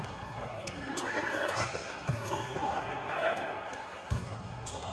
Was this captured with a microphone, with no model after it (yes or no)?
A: no